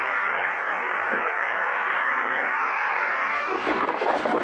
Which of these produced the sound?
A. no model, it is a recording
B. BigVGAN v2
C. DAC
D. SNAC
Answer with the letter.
C